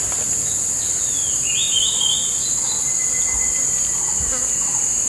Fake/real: real